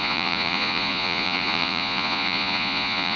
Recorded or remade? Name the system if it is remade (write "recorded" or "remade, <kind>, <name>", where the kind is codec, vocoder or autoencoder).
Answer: remade, vocoder, Vocos